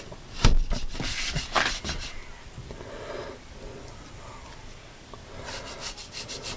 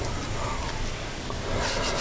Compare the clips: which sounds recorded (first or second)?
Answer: second